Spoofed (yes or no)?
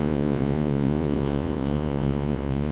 yes